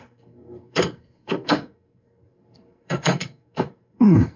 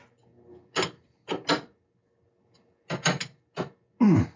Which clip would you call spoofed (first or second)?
first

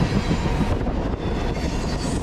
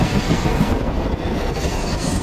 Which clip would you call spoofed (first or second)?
second